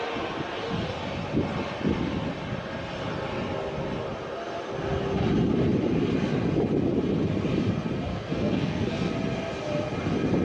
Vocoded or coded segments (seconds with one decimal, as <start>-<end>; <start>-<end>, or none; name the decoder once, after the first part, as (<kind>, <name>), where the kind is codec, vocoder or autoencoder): 8.1-9.1 (codec, SNAC)